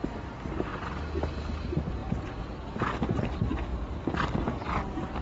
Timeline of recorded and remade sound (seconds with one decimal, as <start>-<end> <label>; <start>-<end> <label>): 0.0-5.2 recorded